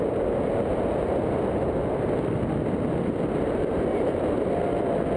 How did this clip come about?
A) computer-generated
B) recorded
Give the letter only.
B